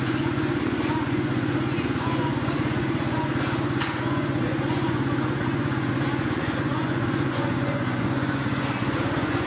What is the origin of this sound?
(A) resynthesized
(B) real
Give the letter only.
A